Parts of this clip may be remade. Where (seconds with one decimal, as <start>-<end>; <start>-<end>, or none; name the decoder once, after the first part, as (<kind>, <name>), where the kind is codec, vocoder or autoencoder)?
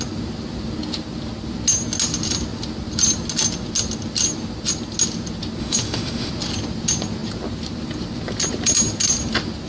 5.6-6.3 (autoencoder, DAC-VAE)